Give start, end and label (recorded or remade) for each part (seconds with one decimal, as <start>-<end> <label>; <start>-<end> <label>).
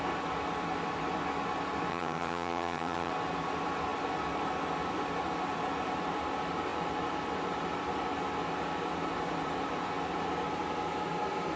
0.0-1.9 recorded; 1.9-3.1 remade; 3.1-11.6 recorded